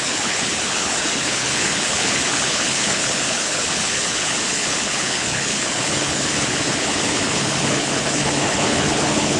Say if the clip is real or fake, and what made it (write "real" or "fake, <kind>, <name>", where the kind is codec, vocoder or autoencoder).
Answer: fake, codec, HILCodec